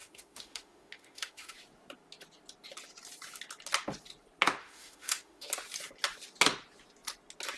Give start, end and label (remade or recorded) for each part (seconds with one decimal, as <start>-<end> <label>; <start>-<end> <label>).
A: 0.0-1.5 remade; 1.5-4.6 recorded; 4.6-5.5 remade; 5.5-7.6 recorded